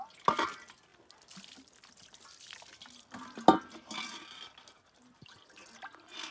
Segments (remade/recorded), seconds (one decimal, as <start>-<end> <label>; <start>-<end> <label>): 0.0-6.3 recorded